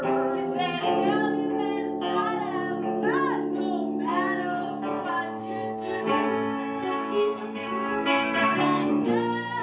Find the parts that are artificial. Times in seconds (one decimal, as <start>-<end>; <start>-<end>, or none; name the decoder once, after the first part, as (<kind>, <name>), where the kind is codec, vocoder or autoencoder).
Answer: 5.4-8.9 (codec, SNAC)